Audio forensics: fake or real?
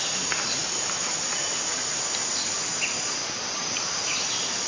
fake